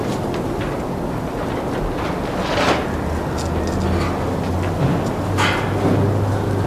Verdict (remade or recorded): recorded